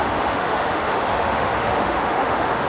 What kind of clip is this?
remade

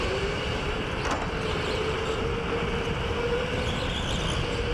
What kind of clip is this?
recorded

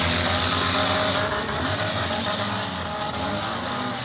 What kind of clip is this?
recorded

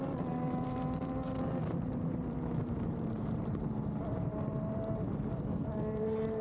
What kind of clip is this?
remade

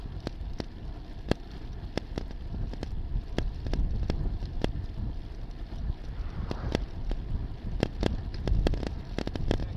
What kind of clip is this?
recorded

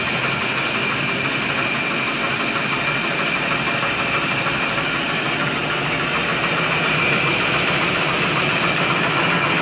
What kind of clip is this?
recorded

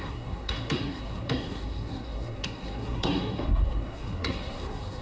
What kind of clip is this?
remade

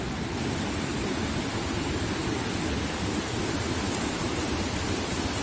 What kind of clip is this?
recorded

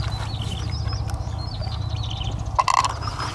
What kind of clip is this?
recorded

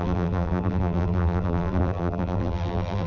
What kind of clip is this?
remade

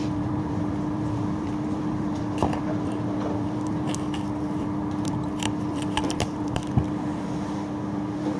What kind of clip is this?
remade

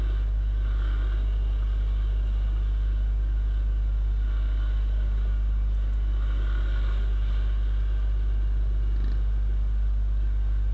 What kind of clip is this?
recorded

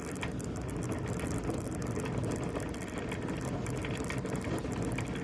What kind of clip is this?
recorded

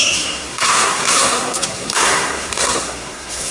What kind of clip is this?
remade